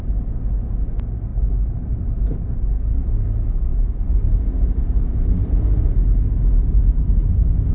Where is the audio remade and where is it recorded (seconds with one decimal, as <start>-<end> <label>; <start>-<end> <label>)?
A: 0.0-1.3 recorded; 1.3-2.6 remade; 2.6-3.7 recorded; 3.7-5.6 remade; 5.6-7.7 recorded